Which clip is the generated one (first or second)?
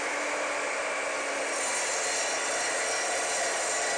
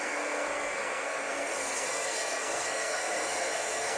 second